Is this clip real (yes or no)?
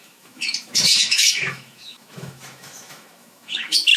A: no